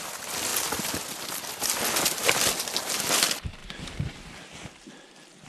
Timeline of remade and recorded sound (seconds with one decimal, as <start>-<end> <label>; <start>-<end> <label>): 0.0-3.6 recorded; 3.6-4.9 remade; 4.9-5.5 recorded